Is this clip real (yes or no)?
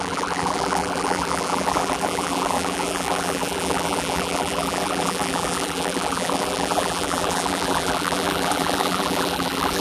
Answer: no